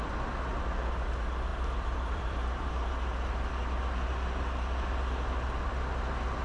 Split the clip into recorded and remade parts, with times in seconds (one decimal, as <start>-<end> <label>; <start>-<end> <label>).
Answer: 0.0-1.5 recorded; 1.5-2.7 remade; 2.7-6.4 recorded